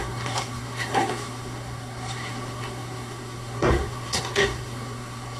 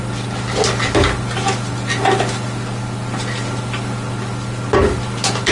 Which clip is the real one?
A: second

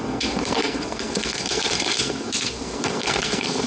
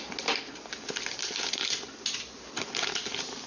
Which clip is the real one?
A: second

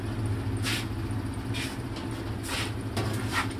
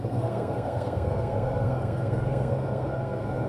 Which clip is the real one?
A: first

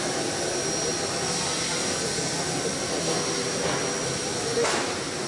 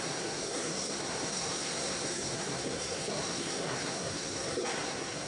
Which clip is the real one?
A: first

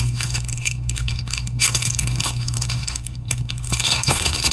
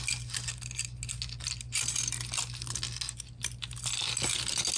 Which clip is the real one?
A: second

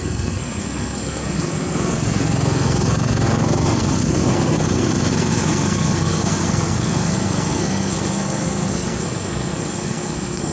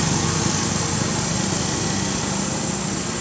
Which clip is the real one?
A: second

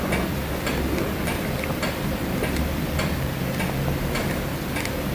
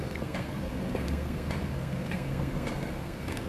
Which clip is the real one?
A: first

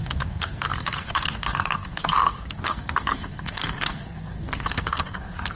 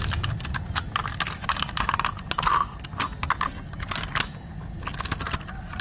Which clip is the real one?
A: second